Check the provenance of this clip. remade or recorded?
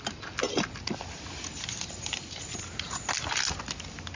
recorded